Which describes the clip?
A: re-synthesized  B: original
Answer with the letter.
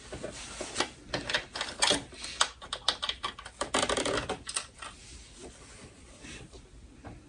B